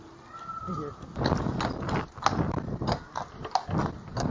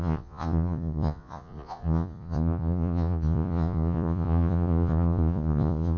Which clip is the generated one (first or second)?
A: second